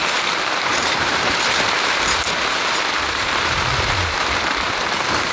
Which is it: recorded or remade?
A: remade